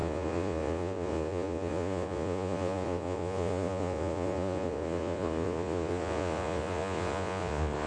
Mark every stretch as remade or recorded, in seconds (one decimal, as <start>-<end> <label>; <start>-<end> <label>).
0.0-7.9 remade